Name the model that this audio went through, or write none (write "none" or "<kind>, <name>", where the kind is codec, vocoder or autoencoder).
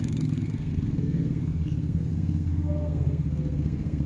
codec, SNAC